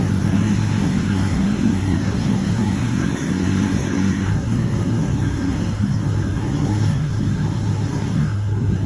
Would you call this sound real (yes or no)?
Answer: no